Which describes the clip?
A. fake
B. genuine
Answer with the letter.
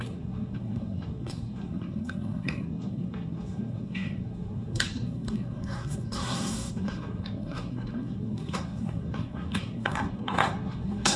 A